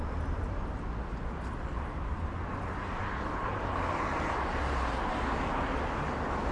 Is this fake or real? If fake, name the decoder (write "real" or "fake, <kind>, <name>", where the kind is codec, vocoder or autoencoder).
real